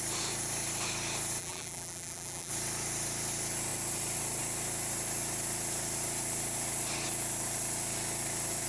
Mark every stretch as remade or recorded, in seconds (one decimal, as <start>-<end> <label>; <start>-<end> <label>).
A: 0.0-1.4 recorded; 1.4-2.5 remade; 2.5-8.7 recorded